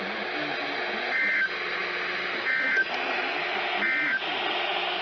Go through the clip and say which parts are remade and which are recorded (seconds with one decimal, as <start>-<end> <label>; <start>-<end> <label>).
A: 0.0-5.0 recorded